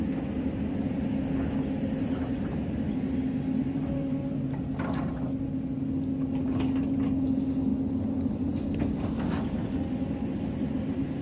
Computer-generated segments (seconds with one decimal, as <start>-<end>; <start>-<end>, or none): none